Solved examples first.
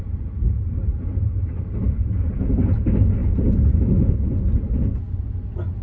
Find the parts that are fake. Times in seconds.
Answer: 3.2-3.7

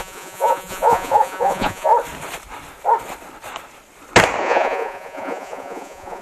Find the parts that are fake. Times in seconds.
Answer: 0.0-1.9; 4.4-6.2

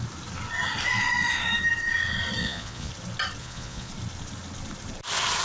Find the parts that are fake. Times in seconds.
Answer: 2.4-2.9; 3.4-3.9

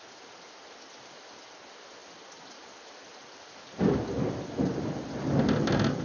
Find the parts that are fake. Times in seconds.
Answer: none